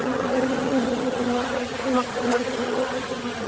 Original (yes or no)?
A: no